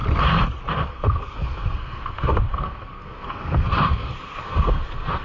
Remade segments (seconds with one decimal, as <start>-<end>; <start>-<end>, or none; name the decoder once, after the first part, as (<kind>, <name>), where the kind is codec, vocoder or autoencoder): 0.9-5.2 (codec, SNAC)